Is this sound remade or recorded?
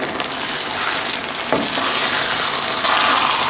recorded